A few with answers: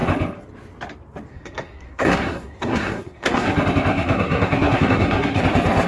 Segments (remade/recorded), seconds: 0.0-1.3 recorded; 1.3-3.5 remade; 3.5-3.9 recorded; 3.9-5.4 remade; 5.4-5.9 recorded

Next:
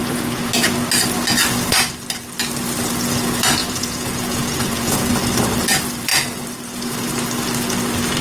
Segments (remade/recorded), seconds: 0.0-0.5 remade; 0.5-3.6 recorded; 3.6-5.1 remade; 5.1-8.2 recorded

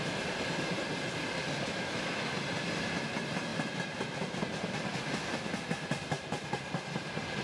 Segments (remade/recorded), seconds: 0.0-1.7 recorded; 1.7-2.3 remade; 2.3-7.4 recorded

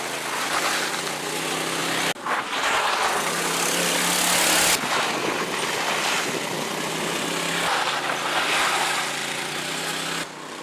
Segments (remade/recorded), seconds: 0.0-10.6 recorded

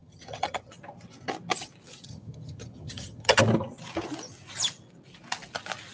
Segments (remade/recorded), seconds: 0.0-0.7 remade; 0.7-2.1 recorded; 2.1-3.4 remade; 3.4-5.9 recorded